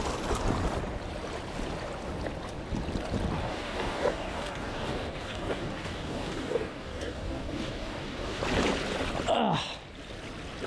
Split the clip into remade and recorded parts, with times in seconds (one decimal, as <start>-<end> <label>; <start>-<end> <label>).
0.0-3.4 recorded; 3.4-8.4 remade; 8.4-10.7 recorded